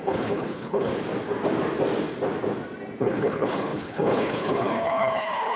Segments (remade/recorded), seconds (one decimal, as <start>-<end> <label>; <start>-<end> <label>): 0.0-0.9 remade; 0.9-3.0 recorded; 3.0-5.6 remade